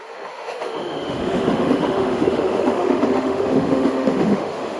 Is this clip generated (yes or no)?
yes